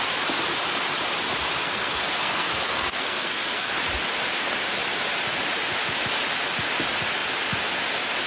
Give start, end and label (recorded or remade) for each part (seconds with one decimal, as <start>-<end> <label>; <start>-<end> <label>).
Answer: 0.0-1.6 recorded; 1.6-3.8 remade; 3.8-8.3 recorded